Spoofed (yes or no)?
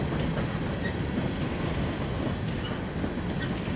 no